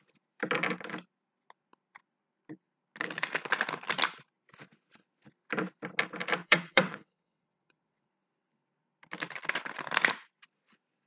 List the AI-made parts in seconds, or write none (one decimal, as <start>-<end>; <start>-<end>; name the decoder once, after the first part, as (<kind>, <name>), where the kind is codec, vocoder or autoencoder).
6.4-8.1 (vocoder, WaveNeXt)